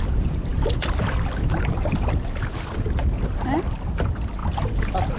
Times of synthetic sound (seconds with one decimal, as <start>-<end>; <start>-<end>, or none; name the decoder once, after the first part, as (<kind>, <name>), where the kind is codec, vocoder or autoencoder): none